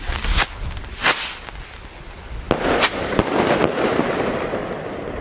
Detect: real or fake real